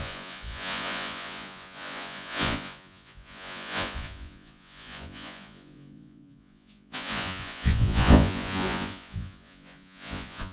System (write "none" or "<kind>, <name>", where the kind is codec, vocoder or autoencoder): vocoder, Vocos